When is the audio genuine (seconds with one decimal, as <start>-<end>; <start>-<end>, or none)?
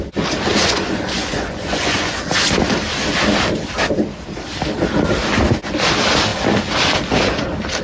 0.0-0.5; 2.2-7.8